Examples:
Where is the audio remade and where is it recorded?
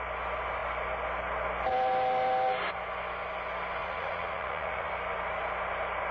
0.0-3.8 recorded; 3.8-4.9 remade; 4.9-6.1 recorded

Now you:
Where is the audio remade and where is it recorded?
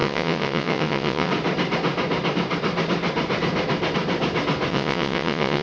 0.0-1.3 remade; 1.3-4.7 recorded; 4.7-5.6 remade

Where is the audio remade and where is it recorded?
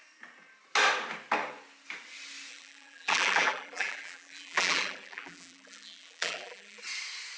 0.0-2.5 recorded; 2.5-6.8 remade; 6.8-7.4 recorded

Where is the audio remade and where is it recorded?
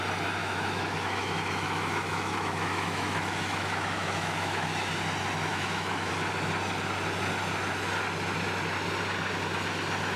0.0-0.4 recorded; 0.4-4.9 remade; 4.9-5.5 recorded; 5.5-6.1 remade; 6.1-10.2 recorded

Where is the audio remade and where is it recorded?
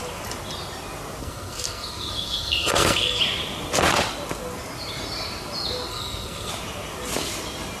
0.0-1.2 recorded; 1.2-3.2 remade; 3.2-5.9 recorded; 5.9-6.5 remade; 6.5-7.8 recorded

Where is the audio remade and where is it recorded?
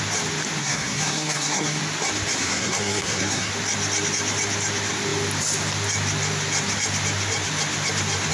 0.0-0.6 recorded; 0.6-1.8 remade; 1.8-2.3 recorded; 2.3-3.5 remade; 3.5-8.3 recorded